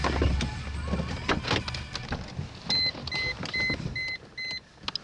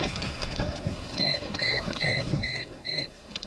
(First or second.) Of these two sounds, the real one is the first